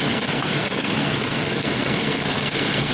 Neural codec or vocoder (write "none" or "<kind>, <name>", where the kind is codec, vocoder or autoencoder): codec, SNAC